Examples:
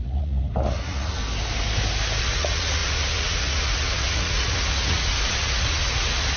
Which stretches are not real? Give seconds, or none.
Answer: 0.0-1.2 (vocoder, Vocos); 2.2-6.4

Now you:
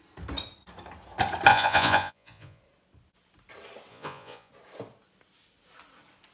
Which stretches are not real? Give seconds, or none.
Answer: 1.5-2.6 (vocoder, Vocos); 3.9-4.5

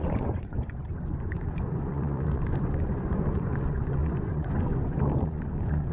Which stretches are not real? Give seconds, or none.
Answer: 0.0-5.9 (vocoder, Vocos)

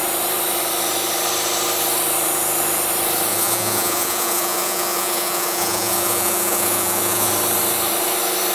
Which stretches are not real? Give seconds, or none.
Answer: 3.3-7.3 (vocoder, Vocos)

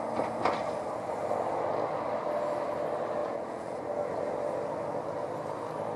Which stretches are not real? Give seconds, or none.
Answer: 3.2-3.8 (vocoder, Vocos)

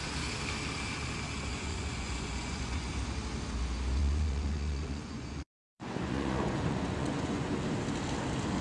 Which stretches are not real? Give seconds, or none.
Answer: 1.5-2.9 (vocoder, Vocos); 4.0-7.6

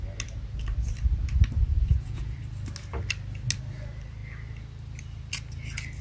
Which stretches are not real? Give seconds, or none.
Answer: 1.9-2.4 (vocoder, Vocos)

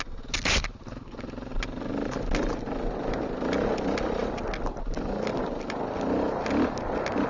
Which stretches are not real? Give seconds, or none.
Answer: none